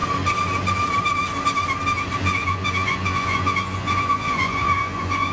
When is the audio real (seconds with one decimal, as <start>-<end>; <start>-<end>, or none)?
0.0-2.2